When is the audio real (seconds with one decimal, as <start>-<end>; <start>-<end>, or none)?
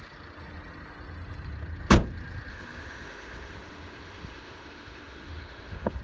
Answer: 0.0-2.5